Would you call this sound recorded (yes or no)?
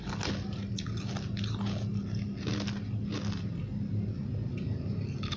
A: yes